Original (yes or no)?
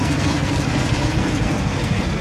no